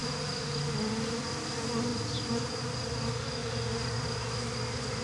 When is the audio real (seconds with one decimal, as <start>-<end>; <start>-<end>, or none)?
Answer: 0.0-5.0

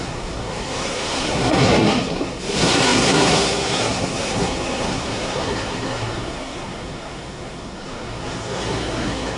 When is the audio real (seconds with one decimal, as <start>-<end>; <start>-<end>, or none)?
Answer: none

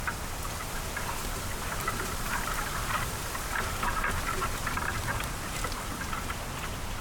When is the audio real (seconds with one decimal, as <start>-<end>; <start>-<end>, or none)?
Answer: 0.0-1.2; 3.3-5.0; 6.0-7.0

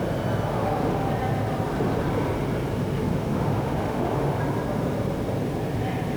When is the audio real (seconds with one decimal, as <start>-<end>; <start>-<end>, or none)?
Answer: 0.0-0.5; 1.1-3.1; 4.4-6.2

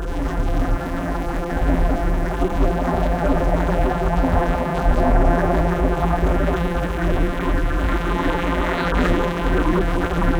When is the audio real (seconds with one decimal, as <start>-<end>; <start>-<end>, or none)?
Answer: none

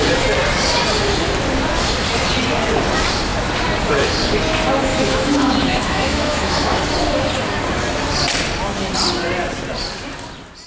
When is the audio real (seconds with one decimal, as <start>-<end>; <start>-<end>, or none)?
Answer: 0.0-4.9; 6.8-10.7